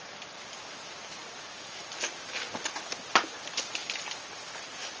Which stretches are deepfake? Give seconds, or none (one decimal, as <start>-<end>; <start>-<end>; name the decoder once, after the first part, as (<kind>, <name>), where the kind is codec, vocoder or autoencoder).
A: none